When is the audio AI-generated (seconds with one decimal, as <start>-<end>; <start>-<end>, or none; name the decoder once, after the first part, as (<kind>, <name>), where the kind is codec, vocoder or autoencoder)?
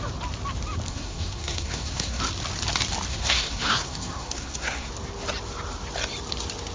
0.9-2.2 (codec, SNAC); 3.1-4.9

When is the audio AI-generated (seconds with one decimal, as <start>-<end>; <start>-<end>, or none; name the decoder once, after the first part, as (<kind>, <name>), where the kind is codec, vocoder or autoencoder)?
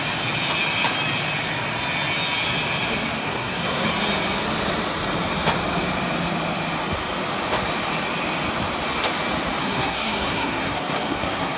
3.2-3.9 (codec, SNAC); 9.6-11.6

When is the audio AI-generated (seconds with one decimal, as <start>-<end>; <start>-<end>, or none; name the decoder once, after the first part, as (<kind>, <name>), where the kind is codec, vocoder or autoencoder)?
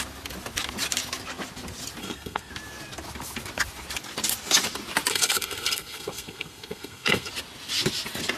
2.0-2.5 (codec, SNAC); 5.1-7.3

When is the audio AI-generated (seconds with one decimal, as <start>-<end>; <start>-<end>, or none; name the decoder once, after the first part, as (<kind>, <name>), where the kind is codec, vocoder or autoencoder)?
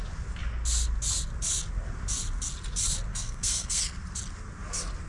3.1-3.8 (codec, SNAC)